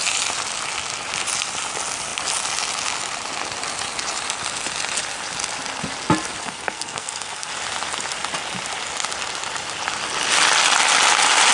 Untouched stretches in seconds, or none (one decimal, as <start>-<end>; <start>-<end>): 0.0-6.4; 7.5-11.5